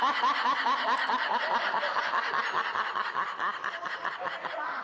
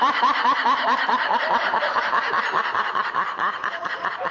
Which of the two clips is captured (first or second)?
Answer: first